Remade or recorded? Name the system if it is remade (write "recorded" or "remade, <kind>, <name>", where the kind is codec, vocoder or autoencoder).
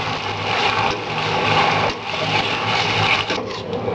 recorded